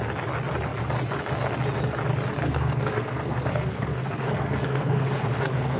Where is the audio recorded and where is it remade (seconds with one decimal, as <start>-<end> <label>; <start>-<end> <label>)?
0.0-2.4 recorded; 2.4-5.8 remade